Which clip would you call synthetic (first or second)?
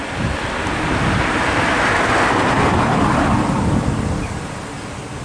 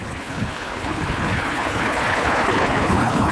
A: second